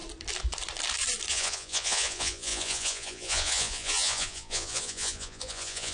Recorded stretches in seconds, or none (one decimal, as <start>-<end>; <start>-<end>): 0.0-1.3